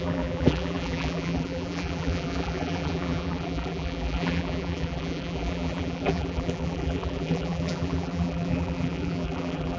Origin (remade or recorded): remade